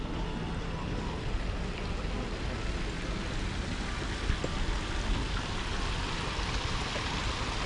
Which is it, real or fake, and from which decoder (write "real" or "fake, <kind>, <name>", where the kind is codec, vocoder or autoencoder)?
real